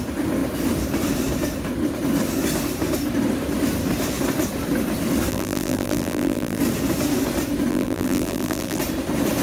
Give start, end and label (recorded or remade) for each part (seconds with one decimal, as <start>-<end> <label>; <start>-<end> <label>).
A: 0.0-5.3 recorded; 5.3-6.6 remade; 6.6-7.7 recorded; 7.7-8.8 remade; 8.8-9.4 recorded